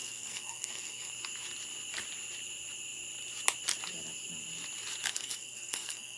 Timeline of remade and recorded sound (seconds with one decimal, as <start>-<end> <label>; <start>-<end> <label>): 0.0-1.1 remade; 1.1-5.1 recorded; 5.1-6.2 remade